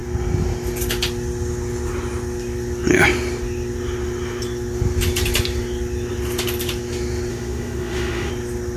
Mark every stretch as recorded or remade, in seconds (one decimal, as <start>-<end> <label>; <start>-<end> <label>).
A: 0.0-7.3 recorded; 7.3-8.3 remade; 8.3-8.8 recorded